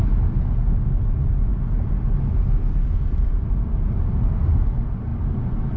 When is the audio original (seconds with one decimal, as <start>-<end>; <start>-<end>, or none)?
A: 0.0-5.8